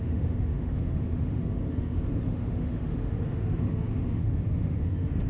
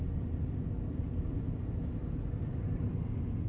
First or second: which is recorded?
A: second